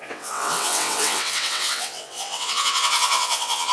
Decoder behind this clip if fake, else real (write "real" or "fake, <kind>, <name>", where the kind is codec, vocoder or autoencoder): fake, vocoder, WaveNeXt